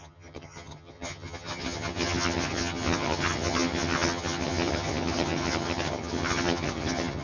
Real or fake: fake